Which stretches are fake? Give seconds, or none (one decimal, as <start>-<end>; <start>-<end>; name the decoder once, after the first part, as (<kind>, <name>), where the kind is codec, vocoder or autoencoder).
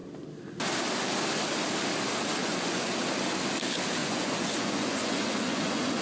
2.4-2.9 (vocoder, Vocos); 4.0-6.0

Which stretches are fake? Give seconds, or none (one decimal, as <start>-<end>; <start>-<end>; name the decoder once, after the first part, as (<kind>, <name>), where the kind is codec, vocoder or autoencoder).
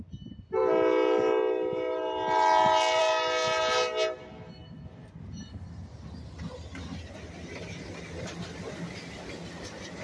none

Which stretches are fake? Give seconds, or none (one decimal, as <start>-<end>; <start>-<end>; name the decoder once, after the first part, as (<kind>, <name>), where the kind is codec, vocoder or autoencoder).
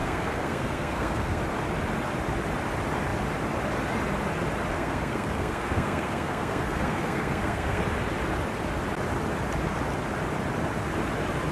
0.0-1.4 (codec, SNAC); 4.7-7.8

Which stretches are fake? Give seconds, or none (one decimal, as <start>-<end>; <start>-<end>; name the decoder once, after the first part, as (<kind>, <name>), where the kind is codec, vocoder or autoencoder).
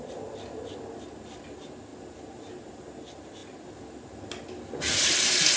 none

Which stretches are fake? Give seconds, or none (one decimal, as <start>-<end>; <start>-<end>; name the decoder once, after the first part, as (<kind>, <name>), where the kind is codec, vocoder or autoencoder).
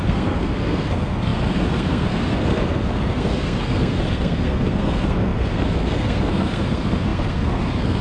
0.0-8.0 (codec, SNAC)